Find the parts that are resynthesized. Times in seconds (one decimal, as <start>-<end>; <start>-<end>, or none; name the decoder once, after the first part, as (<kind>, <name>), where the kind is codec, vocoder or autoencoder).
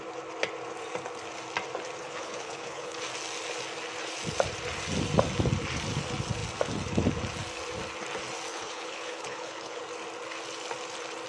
2.0-3.0 (codec, HILCodec); 8.5-9.8